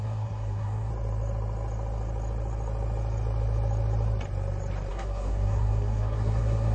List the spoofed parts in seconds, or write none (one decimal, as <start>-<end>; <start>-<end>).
0.0-0.9; 4.9-6.7